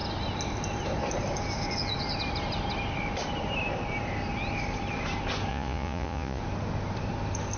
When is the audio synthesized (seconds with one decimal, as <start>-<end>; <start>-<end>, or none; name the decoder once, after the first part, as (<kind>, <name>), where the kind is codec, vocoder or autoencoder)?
5.5-6.4 (vocoder, Vocos)